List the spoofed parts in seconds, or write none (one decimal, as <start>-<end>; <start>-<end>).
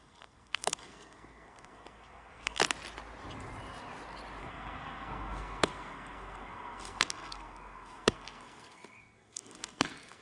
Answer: 0.0-2.6; 4.4-10.2